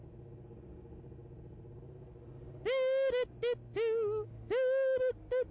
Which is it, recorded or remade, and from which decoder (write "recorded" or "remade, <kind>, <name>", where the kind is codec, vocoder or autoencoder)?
recorded